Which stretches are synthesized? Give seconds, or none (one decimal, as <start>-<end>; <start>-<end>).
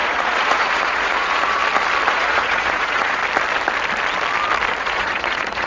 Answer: 0.0-1.6; 2.1-3.2; 4.8-5.7